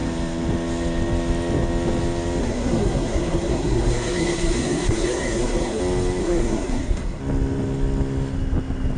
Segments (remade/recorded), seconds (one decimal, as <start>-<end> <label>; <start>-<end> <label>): 0.0-2.4 recorded; 2.4-5.8 remade; 5.8-6.2 recorded; 6.2-7.2 remade; 7.2-9.0 recorded